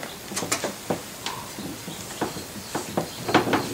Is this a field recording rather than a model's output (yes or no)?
yes